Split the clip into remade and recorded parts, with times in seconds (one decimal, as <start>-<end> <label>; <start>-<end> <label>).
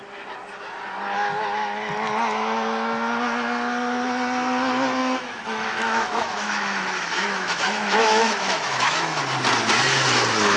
0.0-5.0 recorded; 5.0-9.2 remade; 9.2-10.6 recorded